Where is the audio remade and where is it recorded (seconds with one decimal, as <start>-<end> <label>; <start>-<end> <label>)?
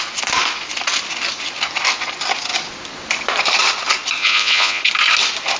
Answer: 0.0-4.2 recorded; 4.2-4.8 remade; 4.8-5.6 recorded